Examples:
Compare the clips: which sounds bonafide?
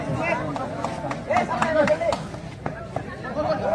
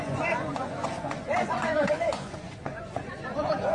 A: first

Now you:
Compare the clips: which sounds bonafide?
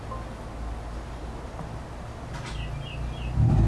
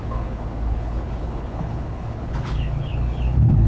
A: first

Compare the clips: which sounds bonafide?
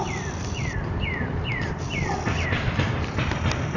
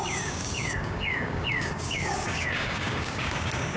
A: first